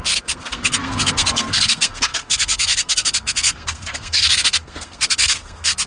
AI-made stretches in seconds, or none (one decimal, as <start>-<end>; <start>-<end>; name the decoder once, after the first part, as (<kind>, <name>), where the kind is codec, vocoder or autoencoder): 0.0-5.9 (codec, SNAC)